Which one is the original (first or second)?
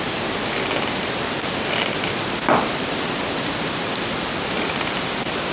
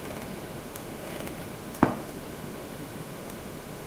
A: first